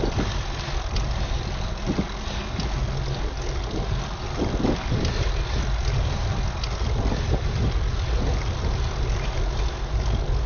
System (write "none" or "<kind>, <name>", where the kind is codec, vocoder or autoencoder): none